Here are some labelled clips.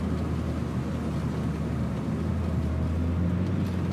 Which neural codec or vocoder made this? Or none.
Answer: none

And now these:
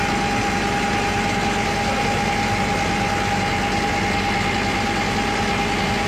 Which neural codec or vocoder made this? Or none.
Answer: none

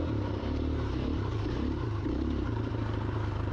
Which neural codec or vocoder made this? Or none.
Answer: vocoder, BigVGAN v2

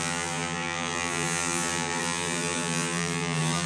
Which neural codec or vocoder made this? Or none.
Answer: vocoder, BigVGAN v2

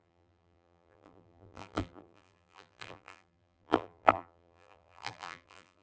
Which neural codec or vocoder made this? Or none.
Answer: vocoder, BigVGAN v2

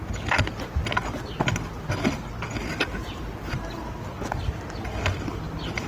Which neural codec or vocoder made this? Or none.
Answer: none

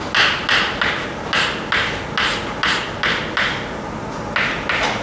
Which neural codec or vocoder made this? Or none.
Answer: none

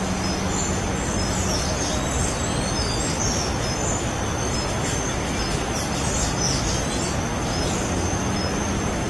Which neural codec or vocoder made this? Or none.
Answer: none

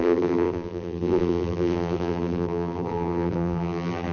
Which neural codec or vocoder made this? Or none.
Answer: vocoder, BigVGAN v2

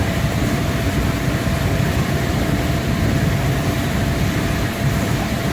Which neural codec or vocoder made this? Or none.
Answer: vocoder, BigVGAN v2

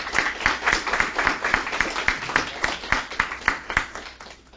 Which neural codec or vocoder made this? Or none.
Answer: vocoder, BigVGAN v2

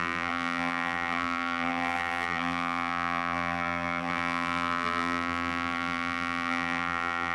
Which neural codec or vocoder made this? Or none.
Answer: vocoder, BigVGAN v2